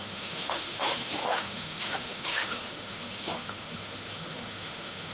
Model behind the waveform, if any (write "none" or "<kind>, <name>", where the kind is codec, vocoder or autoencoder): autoencoder, DAC-VAE